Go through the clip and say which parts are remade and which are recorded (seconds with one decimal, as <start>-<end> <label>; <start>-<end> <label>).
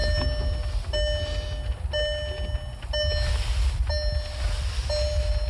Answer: 0.0-5.5 recorded